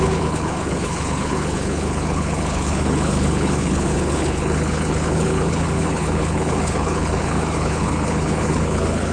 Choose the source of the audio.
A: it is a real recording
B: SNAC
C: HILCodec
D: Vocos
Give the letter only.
C